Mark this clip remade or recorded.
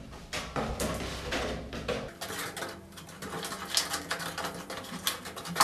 recorded